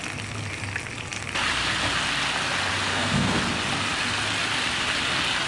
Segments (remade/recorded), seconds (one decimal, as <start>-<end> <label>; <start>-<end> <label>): 0.0-2.9 recorded; 2.9-3.4 remade; 3.4-5.5 recorded